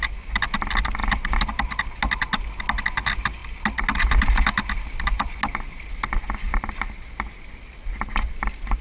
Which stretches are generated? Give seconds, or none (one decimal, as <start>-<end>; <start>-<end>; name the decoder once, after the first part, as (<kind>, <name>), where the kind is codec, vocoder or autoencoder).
none